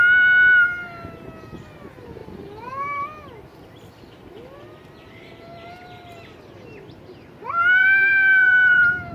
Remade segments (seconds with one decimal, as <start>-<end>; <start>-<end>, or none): 2.2-5.3; 7.8-9.1

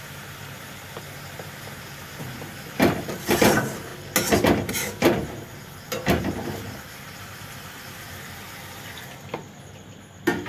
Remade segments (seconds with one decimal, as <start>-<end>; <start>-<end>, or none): 0.0-3.9; 4.7-10.5

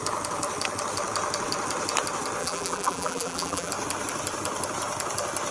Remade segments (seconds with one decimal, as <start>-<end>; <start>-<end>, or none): 2.4-3.7

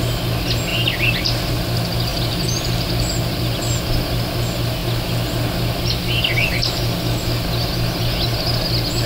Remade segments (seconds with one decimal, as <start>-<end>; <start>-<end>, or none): 2.1-4.0